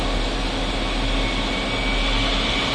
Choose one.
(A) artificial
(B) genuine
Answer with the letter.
B